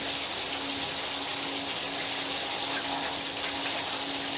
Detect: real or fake real